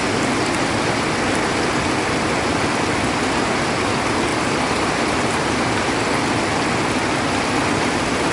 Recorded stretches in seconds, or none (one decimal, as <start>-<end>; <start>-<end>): 0.0-4.3; 5.6-8.3